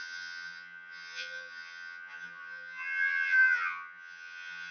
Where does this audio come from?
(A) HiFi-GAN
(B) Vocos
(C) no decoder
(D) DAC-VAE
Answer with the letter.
A